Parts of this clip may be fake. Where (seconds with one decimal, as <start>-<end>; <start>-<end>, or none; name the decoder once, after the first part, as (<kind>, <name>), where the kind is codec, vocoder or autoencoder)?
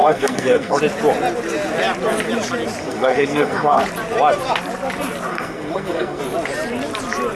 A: 0.0-0.8 (codec, SNAC); 2.8-3.8; 5.3-6.2